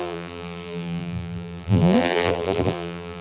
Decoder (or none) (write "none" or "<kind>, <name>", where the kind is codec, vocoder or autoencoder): vocoder, BigVGAN v2